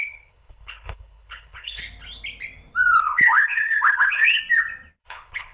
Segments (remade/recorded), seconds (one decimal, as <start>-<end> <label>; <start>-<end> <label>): 0.0-1.8 remade; 1.8-3.0 recorded; 3.0-4.4 remade; 4.4-5.0 recorded; 5.0-5.5 remade